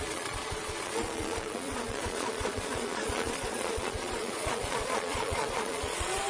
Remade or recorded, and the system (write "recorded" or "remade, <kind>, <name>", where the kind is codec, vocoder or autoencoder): remade, vocoder, Vocos